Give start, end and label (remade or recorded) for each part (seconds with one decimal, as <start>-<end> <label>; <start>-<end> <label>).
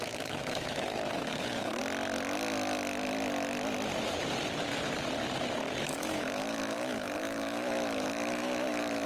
0.0-1.8 remade; 1.8-5.8 recorded; 5.8-9.1 remade